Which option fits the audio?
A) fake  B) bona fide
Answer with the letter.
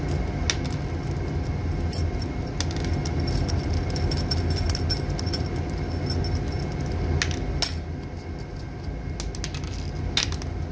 B